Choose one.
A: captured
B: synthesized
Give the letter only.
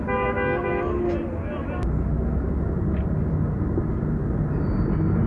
A